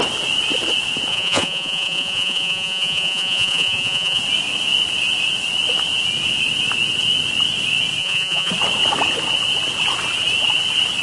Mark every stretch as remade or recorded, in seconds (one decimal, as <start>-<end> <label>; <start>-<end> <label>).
0.0-1.1 recorded; 1.1-4.2 remade; 4.2-8.0 recorded; 8.0-8.5 remade; 8.5-11.0 recorded